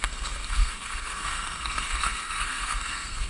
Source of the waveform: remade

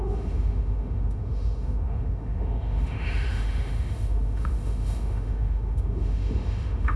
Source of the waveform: remade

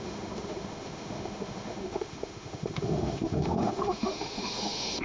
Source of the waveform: remade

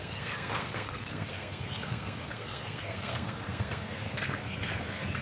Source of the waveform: remade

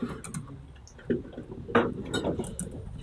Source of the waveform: recorded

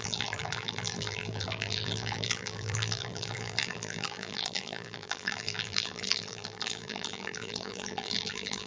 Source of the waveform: remade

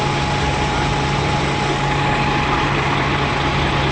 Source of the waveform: recorded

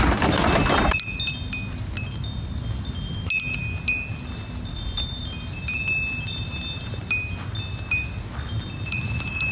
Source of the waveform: recorded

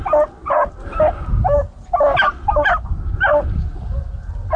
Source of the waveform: recorded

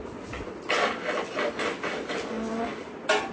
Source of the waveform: recorded